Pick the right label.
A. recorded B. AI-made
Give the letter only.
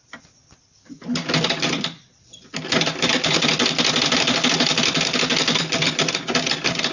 A